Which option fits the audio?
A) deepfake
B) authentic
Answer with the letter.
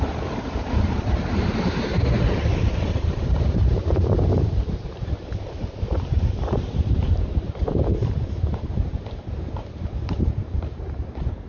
A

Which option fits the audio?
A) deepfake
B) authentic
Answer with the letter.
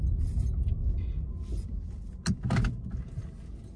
B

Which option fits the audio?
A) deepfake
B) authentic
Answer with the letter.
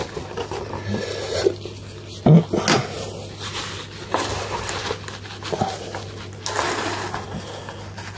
B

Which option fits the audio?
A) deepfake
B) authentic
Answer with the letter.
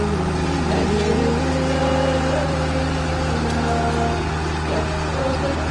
B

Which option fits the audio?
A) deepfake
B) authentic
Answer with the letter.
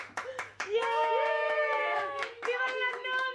A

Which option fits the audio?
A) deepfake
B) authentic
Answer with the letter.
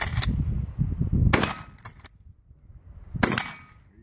B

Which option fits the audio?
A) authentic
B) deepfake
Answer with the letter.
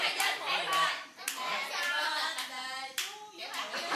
B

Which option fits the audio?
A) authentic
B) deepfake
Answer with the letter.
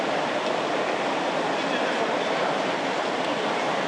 B